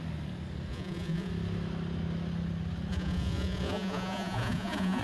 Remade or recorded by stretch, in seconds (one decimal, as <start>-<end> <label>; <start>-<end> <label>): 0.0-0.7 recorded; 0.7-1.3 remade; 1.3-2.9 recorded; 2.9-5.0 remade